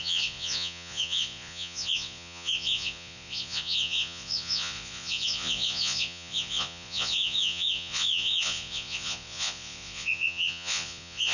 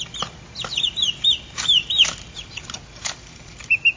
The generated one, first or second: first